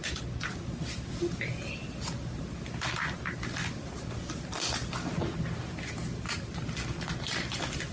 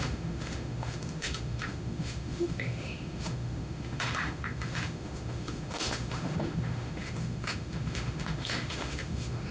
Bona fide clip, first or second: first